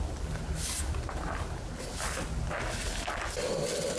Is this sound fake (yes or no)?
no